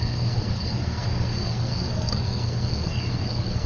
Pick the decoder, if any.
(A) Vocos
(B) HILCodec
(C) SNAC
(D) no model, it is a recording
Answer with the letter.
C